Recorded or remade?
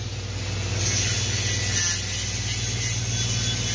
recorded